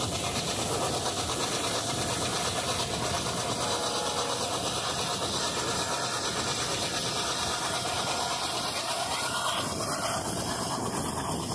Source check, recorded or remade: recorded